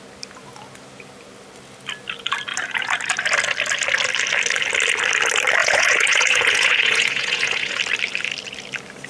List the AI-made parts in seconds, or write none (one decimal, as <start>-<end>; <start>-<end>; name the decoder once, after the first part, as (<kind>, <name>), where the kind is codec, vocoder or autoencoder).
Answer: 5.6-7.8 (vocoder, Vocos)